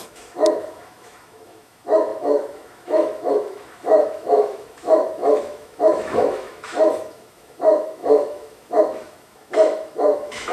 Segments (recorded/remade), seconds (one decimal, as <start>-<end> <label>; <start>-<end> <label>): 0.0-10.5 remade